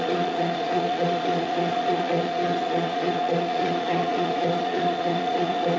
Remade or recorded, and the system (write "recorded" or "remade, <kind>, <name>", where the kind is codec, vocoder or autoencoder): remade, vocoder, Vocos